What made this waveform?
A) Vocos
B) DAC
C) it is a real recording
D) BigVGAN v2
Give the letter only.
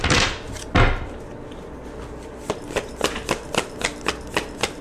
C